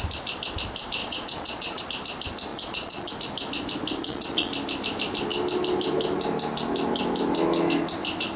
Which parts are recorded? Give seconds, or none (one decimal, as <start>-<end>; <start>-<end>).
0.0-1.0; 1.8-2.5; 3.1-4.0; 4.5-8.4